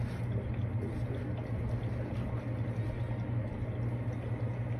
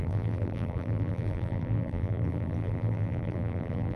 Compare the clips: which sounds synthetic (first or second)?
second